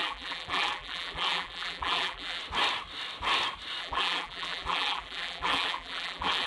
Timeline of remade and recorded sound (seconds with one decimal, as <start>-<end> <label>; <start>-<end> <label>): 0.0-2.4 remade; 2.4-3.8 recorded; 3.8-6.5 remade